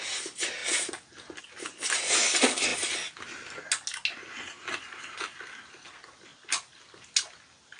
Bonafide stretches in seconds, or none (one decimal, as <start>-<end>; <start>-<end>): 0.0-7.8